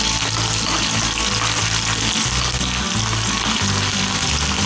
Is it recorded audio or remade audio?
recorded